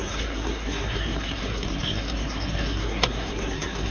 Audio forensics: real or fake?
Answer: fake